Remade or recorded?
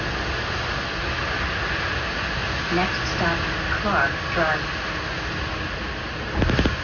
recorded